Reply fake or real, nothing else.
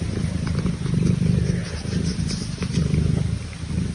real